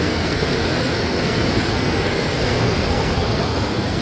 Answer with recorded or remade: remade